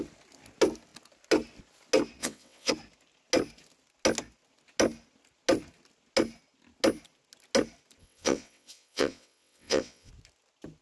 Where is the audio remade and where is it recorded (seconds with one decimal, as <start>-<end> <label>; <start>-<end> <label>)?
0.0-2.2 recorded; 2.2-2.7 remade; 2.7-8.0 recorded; 8.0-10.1 remade; 10.1-10.8 recorded